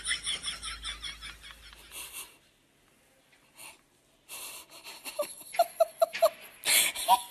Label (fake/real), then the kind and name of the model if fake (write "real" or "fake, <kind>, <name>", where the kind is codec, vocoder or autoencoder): real